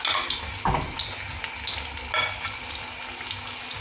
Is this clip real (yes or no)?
yes